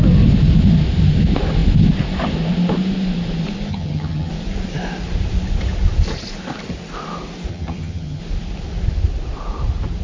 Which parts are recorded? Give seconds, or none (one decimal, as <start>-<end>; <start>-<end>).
0.0-3.7; 4.3-7.5; 8.2-10.0